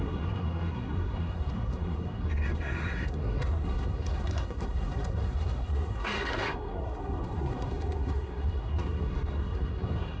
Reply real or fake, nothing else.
fake